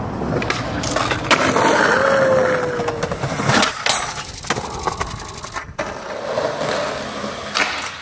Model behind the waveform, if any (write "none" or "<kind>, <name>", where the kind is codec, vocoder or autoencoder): none